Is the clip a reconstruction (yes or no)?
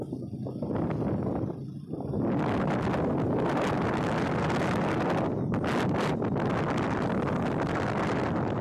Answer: no